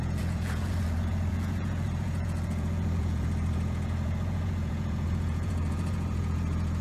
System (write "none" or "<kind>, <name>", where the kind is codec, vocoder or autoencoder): vocoder, Vocos